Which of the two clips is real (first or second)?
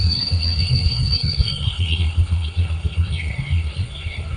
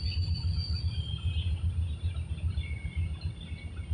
second